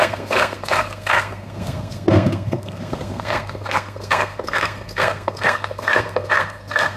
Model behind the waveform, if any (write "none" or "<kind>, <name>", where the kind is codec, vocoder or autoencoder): codec, SNAC